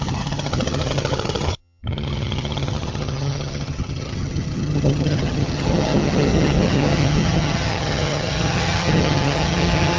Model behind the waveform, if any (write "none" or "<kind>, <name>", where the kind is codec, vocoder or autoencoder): vocoder, HiFi-GAN